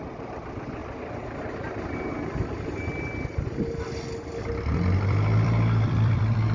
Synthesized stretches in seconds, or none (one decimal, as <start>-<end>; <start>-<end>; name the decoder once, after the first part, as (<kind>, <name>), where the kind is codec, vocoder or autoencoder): 0.0-0.8 (vocoder, BigVGAN v2); 4.7-6.5